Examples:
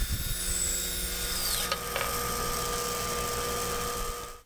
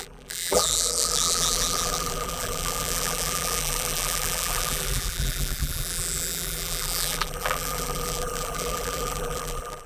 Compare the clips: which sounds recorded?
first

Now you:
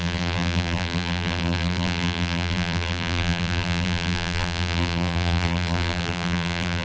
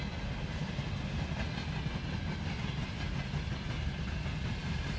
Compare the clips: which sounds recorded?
second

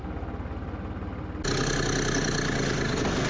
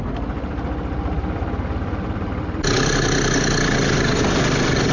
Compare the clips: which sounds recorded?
first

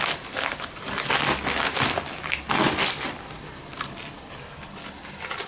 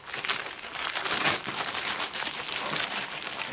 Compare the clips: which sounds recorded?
first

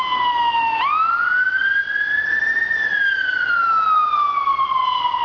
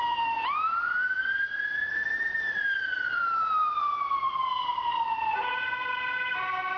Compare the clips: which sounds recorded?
first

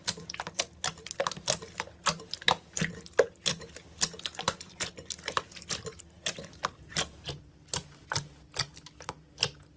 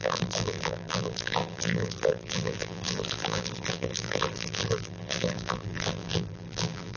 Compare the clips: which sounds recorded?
first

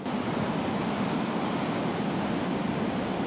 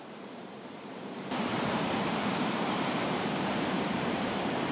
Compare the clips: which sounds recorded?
first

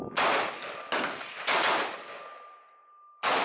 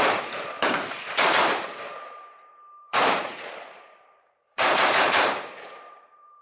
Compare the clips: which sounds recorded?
first